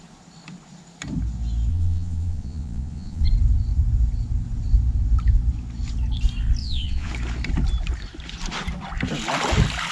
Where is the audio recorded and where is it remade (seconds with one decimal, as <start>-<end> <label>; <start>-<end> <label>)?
0.0-1.7 recorded; 1.7-3.3 remade; 3.3-6.6 recorded; 6.6-7.1 remade; 7.1-9.9 recorded